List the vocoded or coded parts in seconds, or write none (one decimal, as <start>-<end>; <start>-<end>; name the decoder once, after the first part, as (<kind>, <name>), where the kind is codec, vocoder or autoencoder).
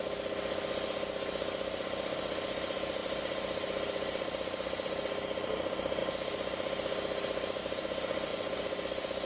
8.3-9.3 (vocoder, Vocos)